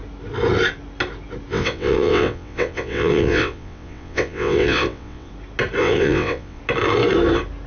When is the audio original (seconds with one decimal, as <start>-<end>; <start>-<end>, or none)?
0.0-1.5; 5.3-5.8; 6.6-7.7